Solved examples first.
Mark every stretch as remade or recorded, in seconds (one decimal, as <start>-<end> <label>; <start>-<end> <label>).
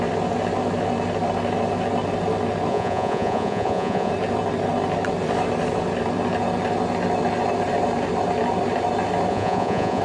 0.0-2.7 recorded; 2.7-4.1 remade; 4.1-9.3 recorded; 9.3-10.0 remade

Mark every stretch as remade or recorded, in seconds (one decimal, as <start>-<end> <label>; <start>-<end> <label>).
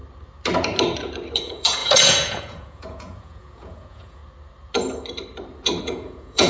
0.0-1.4 recorded; 1.4-4.2 remade; 4.2-5.8 recorded; 5.8-6.5 remade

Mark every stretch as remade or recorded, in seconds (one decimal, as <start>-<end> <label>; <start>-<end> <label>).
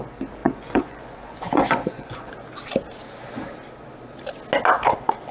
0.0-0.4 recorded; 0.4-2.3 remade; 2.3-5.3 recorded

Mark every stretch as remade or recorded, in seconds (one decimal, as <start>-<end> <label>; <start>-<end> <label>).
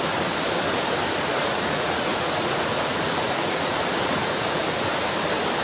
0.0-1.3 recorded; 1.3-4.6 remade; 4.6-5.6 recorded